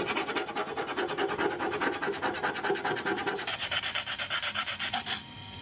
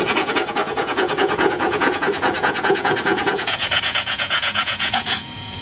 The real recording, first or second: first